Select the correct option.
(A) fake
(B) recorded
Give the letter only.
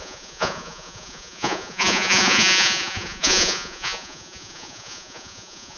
A